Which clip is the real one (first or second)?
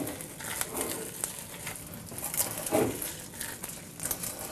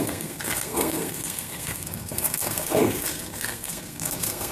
first